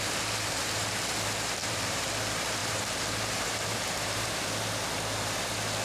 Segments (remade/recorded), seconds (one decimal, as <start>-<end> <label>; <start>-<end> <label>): 0.0-1.6 recorded; 1.6-2.1 remade; 2.1-2.6 recorded; 2.6-4.3 remade; 4.3-5.8 recorded